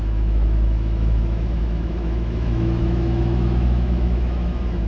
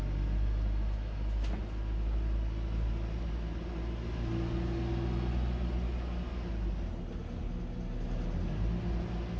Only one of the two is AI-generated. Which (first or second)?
first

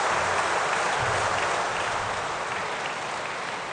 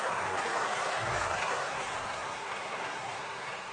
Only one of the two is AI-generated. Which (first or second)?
second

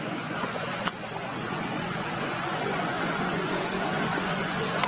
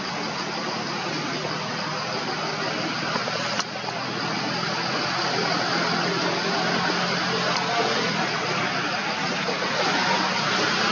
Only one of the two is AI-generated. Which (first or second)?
first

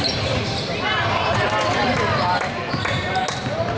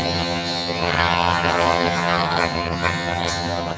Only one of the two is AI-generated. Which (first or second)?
second